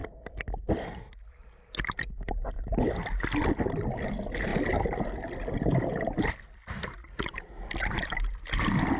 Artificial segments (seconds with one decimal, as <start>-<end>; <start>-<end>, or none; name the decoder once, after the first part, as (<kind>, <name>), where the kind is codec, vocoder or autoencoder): none